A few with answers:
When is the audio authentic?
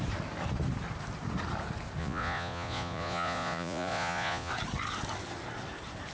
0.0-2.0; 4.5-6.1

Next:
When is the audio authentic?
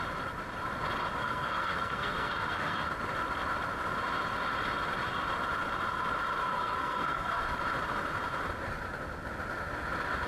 0.0-1.2; 2.9-6.5; 7.5-10.3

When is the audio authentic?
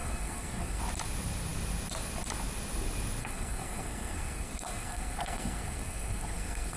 0.8-3.2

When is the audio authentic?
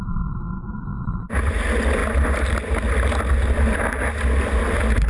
0.0-5.1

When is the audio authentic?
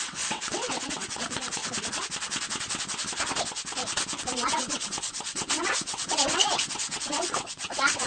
1.6-4.2